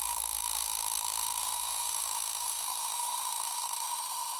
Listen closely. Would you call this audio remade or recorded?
remade